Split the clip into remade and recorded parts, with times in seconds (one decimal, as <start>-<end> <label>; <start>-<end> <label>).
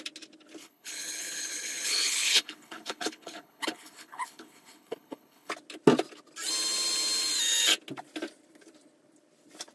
0.0-0.6 recorded; 0.6-5.5 remade; 5.5-9.7 recorded